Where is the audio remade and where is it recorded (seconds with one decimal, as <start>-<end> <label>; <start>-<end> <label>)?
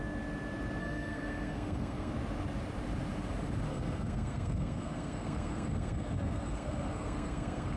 0.0-0.8 recorded; 0.8-2.1 remade; 2.1-3.7 recorded; 3.7-7.8 remade